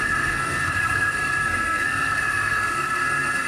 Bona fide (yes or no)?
no